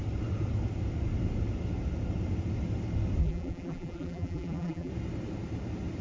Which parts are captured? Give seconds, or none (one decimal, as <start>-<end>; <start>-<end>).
0.0-3.2; 4.9-6.0